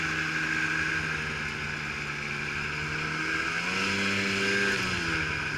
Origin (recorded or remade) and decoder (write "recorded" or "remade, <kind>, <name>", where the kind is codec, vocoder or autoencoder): recorded